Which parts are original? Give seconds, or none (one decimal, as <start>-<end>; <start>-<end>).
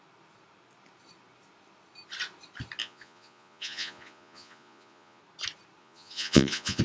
0.0-2.8; 5.2-5.8